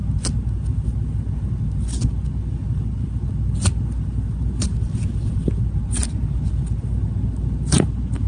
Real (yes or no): yes